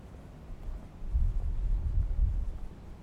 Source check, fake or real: real